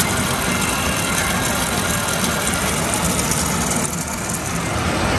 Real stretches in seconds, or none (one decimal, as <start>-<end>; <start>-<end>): 0.0-1.2; 3.5-5.2